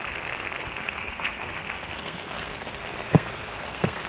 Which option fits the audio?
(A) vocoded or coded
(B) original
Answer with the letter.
A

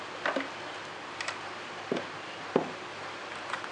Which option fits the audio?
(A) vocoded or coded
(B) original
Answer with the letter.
B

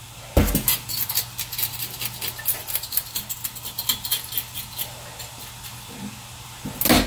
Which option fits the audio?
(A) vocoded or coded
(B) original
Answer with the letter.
B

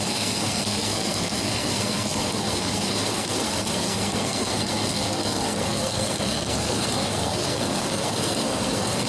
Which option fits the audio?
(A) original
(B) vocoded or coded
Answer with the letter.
B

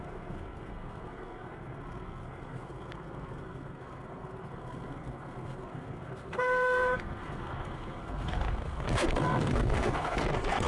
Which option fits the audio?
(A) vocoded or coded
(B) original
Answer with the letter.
A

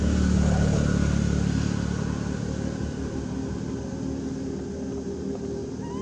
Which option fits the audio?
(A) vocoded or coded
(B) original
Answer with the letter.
B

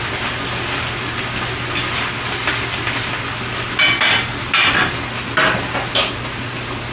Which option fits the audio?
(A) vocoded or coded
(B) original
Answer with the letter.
B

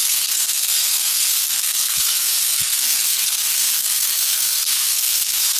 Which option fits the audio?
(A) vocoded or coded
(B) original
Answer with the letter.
A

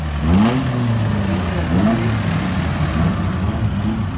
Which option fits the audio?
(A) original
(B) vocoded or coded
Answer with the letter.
A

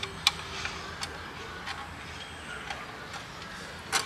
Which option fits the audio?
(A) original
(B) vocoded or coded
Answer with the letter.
A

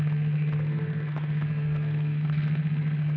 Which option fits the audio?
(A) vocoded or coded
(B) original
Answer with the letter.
A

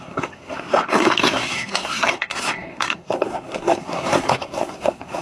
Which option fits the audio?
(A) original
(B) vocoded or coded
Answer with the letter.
B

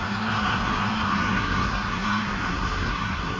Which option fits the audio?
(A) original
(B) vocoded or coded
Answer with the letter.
B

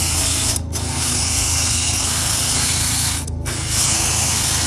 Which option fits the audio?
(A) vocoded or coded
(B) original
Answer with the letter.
A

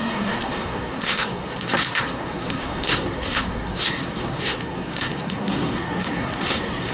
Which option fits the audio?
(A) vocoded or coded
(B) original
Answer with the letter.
A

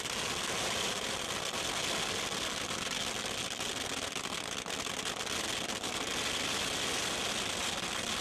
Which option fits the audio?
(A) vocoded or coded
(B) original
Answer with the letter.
B